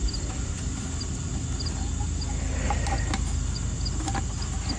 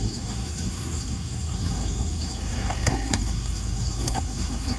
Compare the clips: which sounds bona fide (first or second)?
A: first